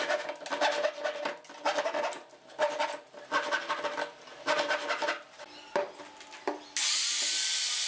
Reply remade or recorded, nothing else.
recorded